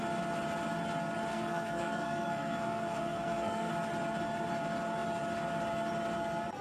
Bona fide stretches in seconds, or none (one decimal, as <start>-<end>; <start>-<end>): 0.0-1.3; 3.7-6.6

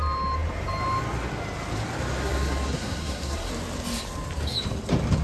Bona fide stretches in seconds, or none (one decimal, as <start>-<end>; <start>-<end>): 0.0-2.2; 3.5-5.2

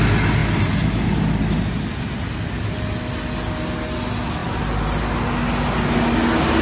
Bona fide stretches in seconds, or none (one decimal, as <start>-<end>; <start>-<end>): 0.0-6.6